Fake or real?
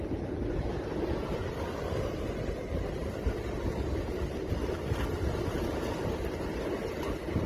real